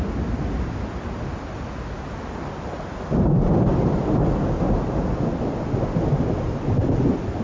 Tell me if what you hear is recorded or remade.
recorded